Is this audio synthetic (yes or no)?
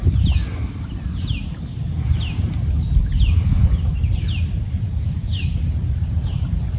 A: no